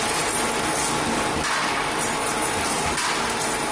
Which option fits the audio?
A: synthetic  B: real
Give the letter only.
B